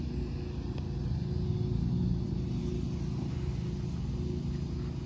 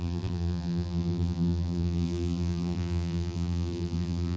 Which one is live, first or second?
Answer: first